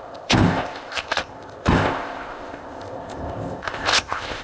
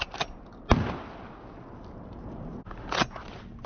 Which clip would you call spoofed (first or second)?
first